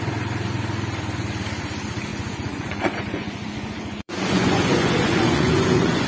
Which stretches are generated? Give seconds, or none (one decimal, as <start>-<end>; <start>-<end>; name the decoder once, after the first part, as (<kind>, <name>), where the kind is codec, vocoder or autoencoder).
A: 2.1-6.1 (vocoder, Vocos)